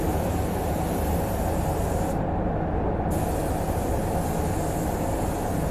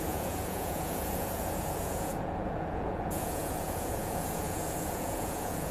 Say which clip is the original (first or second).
first